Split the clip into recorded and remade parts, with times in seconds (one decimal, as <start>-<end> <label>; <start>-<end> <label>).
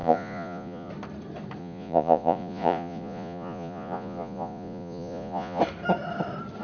0.0-0.9 remade; 0.9-1.6 recorded; 1.6-5.6 remade; 5.6-6.6 recorded